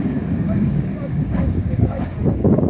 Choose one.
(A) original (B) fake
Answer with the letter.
B